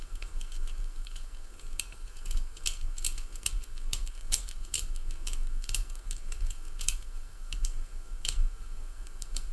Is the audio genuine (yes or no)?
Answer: no